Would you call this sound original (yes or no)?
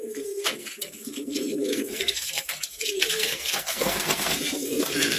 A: no